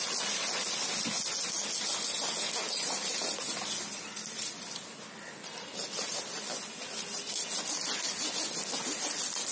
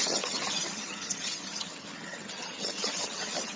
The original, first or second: first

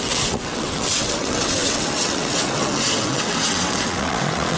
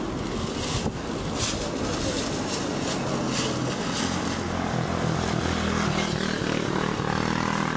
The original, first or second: second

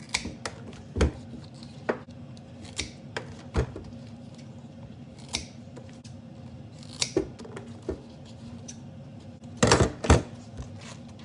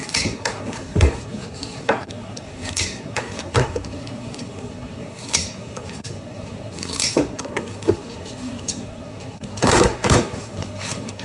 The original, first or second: first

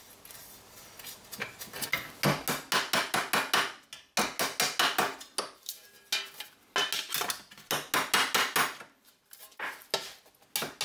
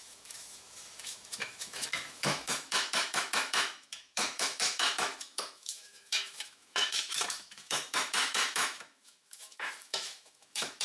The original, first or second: first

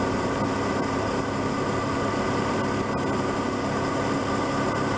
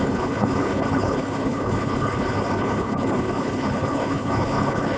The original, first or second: first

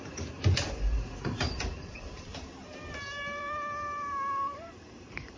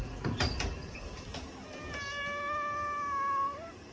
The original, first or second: second